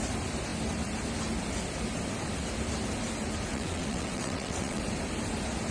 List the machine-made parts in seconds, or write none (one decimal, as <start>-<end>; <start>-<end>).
3.5-4.8